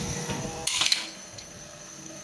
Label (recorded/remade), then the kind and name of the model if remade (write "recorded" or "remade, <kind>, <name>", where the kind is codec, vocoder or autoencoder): remade, codec, SNAC